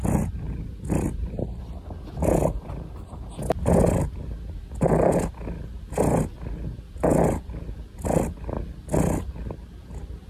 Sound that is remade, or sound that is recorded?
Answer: recorded